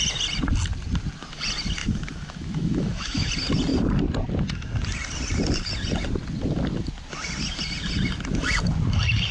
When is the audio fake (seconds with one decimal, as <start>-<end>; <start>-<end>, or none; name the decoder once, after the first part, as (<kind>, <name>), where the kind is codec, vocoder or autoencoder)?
1.8-3.3 (autoencoder, DAC-VAE)